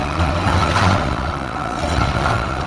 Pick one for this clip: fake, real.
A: fake